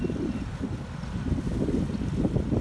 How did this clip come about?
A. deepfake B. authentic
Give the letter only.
B